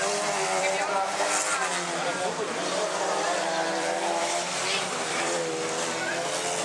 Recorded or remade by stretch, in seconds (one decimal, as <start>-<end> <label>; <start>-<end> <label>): 0.0-0.9 remade; 0.9-2.1 recorded; 2.1-6.1 remade; 6.1-6.6 recorded